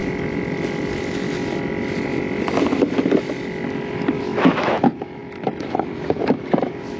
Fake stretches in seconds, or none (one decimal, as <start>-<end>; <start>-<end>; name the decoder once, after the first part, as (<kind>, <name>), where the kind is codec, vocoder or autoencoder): 4.2-7.0 (autoencoder, DAC-VAE)